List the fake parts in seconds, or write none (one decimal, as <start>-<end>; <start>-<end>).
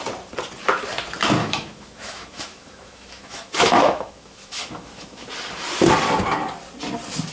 1.4-5.3